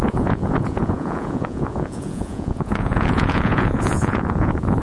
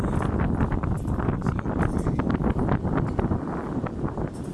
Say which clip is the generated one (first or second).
first